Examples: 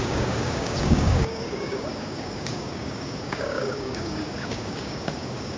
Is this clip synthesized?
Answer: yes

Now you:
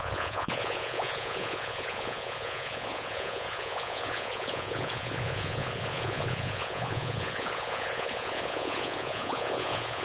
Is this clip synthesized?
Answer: yes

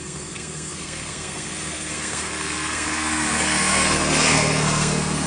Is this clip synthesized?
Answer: yes